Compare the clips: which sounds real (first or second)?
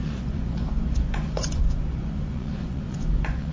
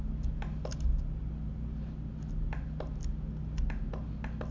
second